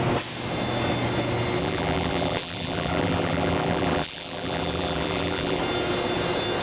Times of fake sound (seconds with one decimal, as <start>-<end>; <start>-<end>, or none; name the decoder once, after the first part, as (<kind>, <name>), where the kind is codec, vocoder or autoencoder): 1.6-5.6 (vocoder, BigVGAN v2)